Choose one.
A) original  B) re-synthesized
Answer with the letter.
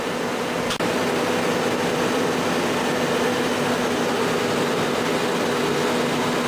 A